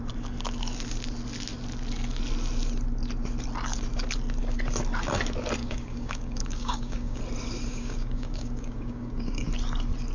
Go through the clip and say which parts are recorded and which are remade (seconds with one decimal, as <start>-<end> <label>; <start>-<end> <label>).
0.0-5.6 recorded; 5.6-7.2 remade; 7.2-7.7 recorded; 7.7-9.5 remade; 9.5-10.1 recorded